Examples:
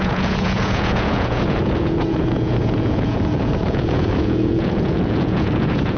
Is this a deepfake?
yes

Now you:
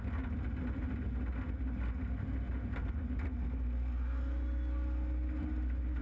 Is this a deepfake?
no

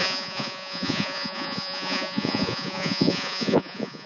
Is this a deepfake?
yes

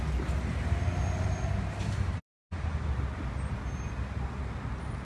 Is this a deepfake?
no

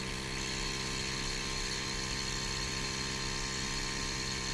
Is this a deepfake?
no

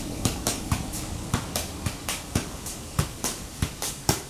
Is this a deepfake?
yes